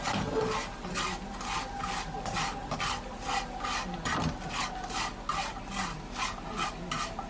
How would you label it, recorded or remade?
recorded